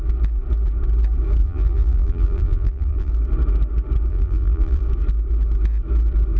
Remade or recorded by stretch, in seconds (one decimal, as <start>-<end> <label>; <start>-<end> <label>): 0.0-1.4 recorded; 1.4-3.1 remade; 3.1-4.1 recorded; 4.1-4.8 remade; 4.8-6.4 recorded